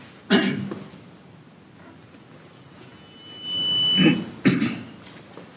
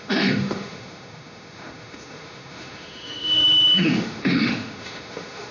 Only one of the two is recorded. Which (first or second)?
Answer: first